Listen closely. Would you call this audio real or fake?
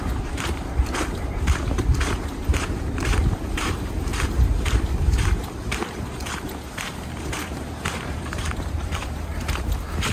fake